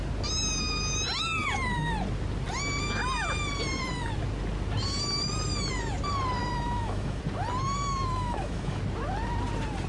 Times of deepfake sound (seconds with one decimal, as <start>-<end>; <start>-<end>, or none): 6.4-7.2; 7.8-8.8